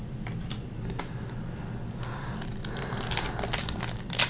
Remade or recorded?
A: recorded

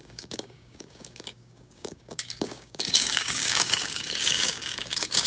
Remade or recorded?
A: remade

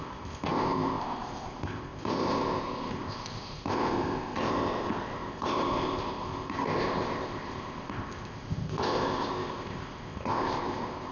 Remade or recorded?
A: remade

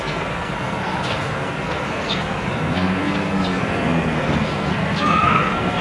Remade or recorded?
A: remade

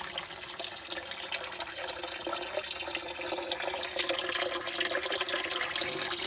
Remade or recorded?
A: recorded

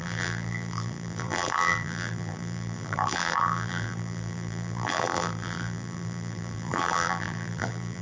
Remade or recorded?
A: remade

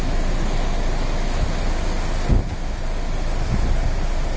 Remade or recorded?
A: recorded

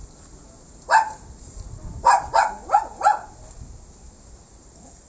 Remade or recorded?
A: recorded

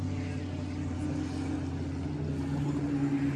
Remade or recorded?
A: recorded